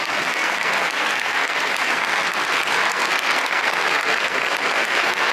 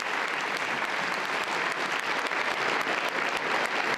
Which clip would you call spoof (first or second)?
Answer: first